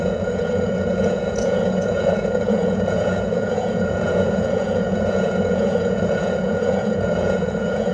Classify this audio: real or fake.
fake